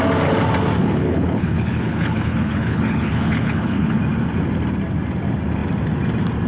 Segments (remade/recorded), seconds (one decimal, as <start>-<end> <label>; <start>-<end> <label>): 0.0-0.8 recorded; 0.8-4.0 remade; 4.0-6.5 recorded